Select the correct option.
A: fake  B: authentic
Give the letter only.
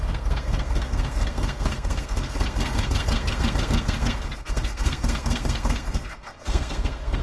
A